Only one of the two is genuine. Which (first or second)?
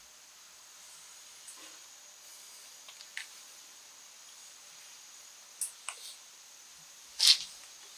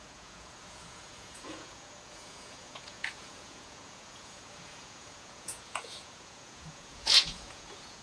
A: first